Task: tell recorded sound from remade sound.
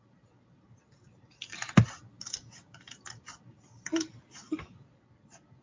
recorded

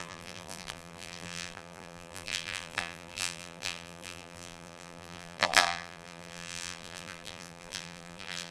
remade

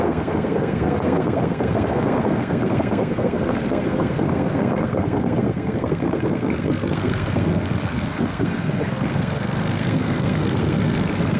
remade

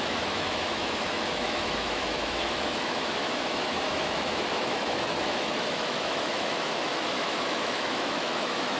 remade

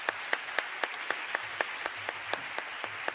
recorded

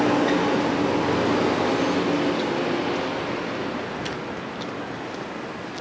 recorded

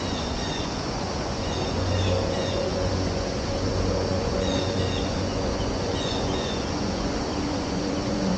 remade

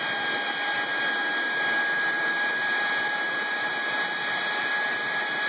recorded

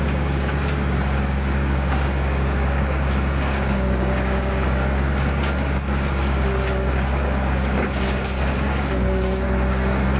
remade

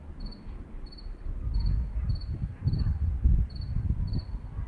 recorded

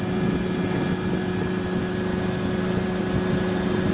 recorded